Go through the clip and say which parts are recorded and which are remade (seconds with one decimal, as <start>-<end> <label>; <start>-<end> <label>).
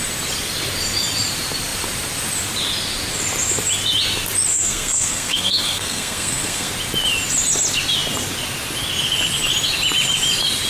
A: 0.0-4.5 recorded; 4.5-6.7 remade; 6.7-10.7 recorded